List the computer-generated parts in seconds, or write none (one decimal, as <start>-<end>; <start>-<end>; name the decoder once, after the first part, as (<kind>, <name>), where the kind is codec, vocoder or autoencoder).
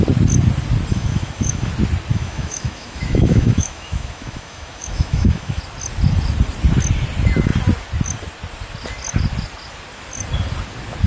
0.9-1.7 (autoencoder, DAC-VAE); 2.1-5.6